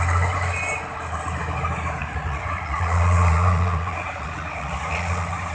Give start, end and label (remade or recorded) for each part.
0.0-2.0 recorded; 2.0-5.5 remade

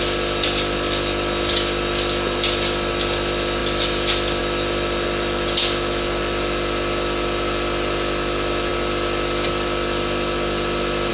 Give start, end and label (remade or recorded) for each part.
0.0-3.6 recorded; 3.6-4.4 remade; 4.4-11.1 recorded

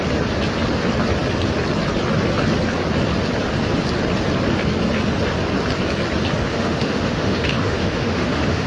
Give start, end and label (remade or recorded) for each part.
0.0-6.5 recorded; 6.5-8.7 remade